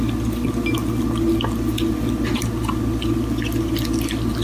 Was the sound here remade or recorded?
recorded